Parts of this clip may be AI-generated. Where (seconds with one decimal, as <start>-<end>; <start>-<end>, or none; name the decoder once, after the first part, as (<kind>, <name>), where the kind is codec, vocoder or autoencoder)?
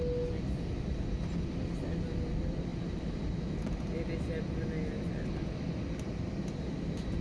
none